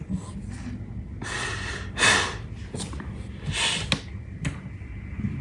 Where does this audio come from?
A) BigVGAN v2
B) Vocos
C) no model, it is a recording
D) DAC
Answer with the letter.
C